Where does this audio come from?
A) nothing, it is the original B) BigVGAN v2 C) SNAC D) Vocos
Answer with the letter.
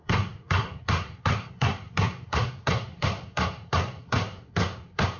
C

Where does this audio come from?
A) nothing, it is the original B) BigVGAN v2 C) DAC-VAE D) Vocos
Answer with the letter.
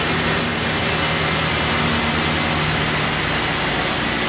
A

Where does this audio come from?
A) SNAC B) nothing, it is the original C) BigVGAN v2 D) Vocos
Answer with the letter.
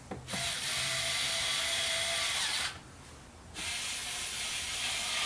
B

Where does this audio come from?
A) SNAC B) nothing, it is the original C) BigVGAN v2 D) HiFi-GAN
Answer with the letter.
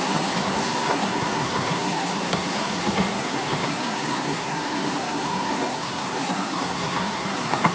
A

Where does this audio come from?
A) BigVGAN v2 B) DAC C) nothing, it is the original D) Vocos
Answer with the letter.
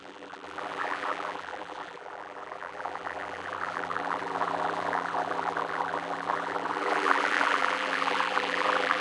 A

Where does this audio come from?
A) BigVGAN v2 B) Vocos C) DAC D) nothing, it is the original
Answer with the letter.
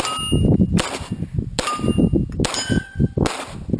D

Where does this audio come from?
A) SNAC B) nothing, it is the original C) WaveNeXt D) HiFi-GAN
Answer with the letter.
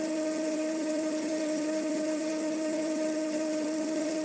D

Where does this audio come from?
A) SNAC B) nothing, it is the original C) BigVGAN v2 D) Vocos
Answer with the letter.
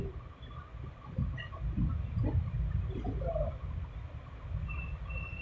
B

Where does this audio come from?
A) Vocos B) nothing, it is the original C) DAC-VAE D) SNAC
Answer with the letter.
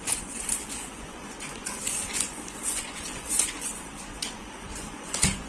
A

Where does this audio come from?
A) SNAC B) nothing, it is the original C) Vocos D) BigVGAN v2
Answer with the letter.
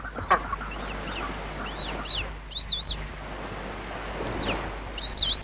B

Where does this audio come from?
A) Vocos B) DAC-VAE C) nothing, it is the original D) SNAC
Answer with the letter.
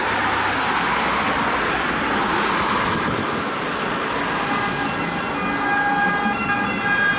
C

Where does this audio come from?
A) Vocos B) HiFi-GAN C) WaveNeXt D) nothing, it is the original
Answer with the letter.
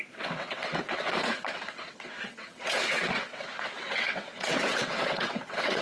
C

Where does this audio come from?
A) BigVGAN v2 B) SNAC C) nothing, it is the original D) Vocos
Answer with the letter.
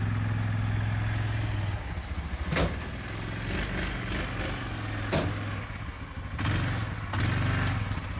C